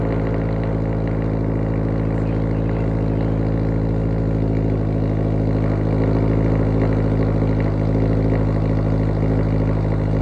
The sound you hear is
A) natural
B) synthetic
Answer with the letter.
A